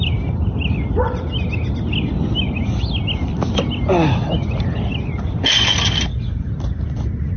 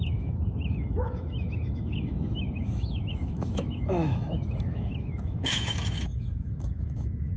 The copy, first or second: second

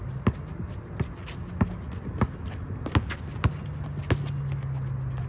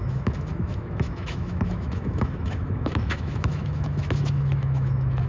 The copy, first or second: second